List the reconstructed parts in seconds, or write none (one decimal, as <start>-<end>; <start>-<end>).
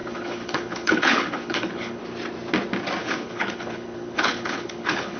0.0-2.0; 3.0-5.2